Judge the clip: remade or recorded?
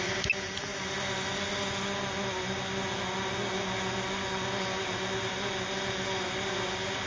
recorded